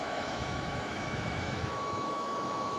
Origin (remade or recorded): remade